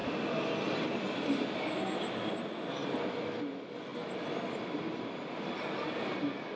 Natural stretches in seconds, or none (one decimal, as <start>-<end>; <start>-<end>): 0.0-6.6